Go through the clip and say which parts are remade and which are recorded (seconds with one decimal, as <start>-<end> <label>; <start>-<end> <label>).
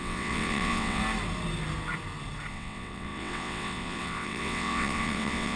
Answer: 0.0-1.0 remade; 1.0-2.5 recorded; 2.5-5.6 remade